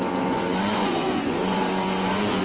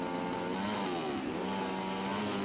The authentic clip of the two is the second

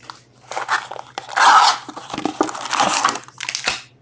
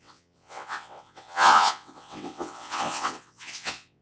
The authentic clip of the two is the first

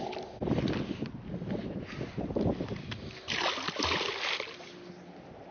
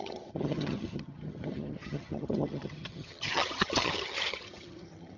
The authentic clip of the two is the first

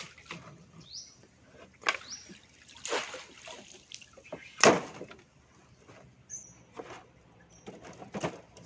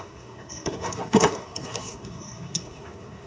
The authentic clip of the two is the first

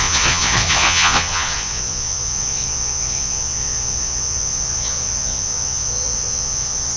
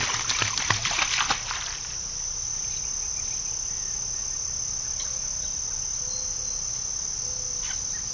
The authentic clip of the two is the second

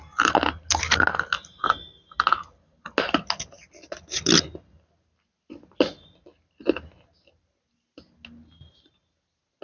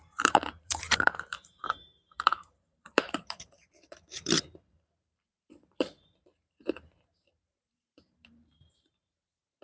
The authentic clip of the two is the first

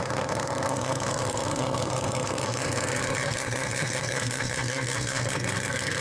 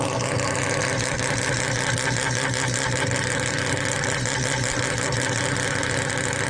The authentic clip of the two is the second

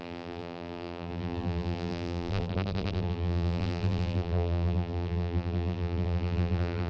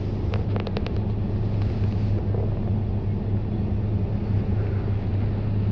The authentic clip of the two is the second